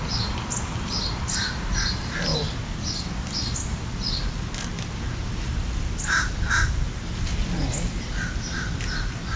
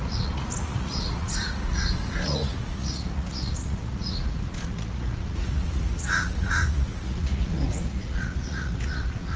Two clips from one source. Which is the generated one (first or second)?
second